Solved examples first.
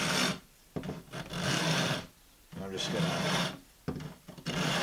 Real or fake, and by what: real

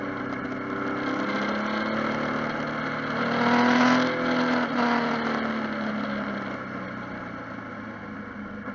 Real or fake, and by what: real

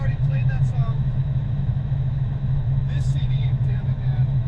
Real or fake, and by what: fake, autoencoder, DAC-VAE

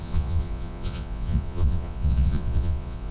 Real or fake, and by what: fake, vocoder, Vocos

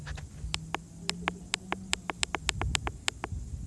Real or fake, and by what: real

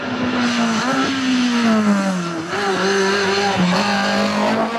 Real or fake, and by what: real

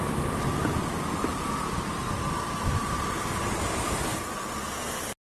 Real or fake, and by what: real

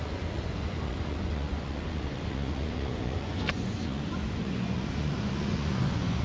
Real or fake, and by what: fake, vocoder, Vocos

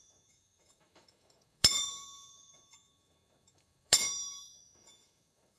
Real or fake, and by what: fake, autoencoder, DAC-VAE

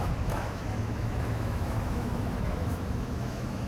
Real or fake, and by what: fake, autoencoder, DAC-VAE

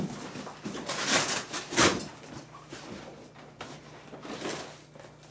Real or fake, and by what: real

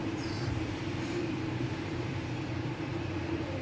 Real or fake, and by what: fake, vocoder, BigVGAN v2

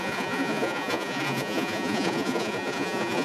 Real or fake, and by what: fake, vocoder, Vocos